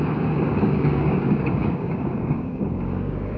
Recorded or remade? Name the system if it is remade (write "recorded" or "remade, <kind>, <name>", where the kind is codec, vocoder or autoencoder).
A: remade, codec, DAC